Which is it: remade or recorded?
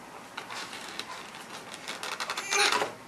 recorded